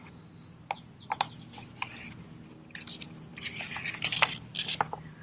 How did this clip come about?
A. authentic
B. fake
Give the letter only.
A